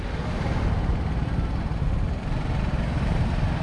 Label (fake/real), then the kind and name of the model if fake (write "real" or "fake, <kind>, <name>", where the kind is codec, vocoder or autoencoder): real